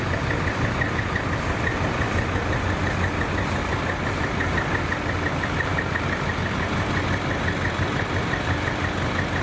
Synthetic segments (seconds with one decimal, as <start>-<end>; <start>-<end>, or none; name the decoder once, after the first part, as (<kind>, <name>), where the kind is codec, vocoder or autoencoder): none